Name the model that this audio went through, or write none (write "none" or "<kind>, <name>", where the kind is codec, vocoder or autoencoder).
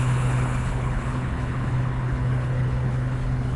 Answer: codec, HILCodec